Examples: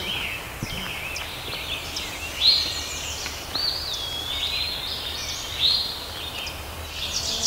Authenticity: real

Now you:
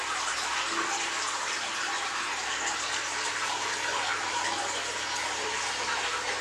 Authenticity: real